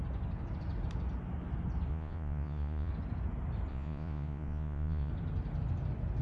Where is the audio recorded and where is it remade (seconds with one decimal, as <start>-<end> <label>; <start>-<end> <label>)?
0.0-1.9 recorded; 1.9-2.9 remade; 2.9-3.7 recorded; 3.7-5.1 remade; 5.1-6.2 recorded